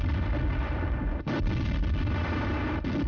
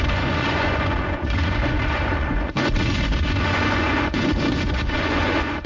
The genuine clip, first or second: first